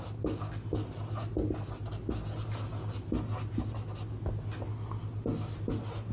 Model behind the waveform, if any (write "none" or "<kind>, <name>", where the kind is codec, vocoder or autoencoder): none